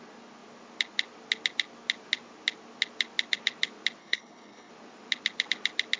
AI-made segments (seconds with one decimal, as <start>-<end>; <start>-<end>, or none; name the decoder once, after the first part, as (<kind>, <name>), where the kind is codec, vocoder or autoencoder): 4.0-4.7 (codec, HILCodec)